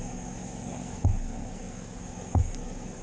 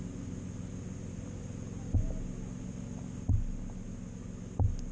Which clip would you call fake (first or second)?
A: first